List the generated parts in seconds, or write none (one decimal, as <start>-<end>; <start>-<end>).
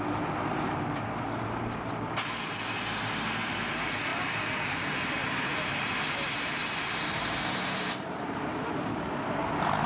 4.1-8.7